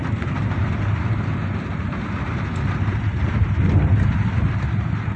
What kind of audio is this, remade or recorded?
remade